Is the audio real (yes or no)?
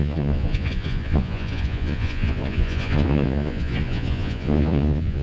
no